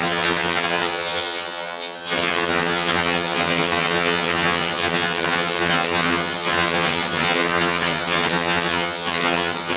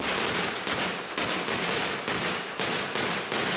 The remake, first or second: first